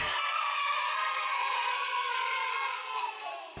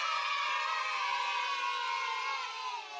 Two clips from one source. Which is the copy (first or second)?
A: first